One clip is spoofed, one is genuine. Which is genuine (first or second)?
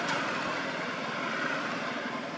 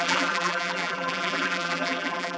first